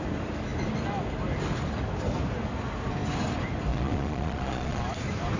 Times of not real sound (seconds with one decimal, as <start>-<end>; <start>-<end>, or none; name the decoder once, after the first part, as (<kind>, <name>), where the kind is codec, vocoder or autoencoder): 3.7-4.8 (vocoder, Vocos)